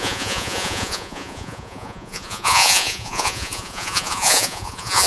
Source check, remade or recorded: remade